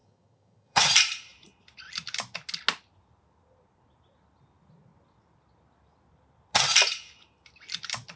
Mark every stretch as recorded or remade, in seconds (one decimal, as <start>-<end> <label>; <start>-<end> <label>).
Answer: 0.0-0.9 remade; 0.9-8.2 recorded